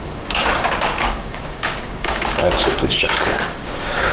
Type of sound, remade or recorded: remade